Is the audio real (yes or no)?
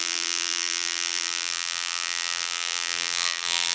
no